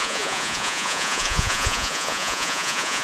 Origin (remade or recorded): remade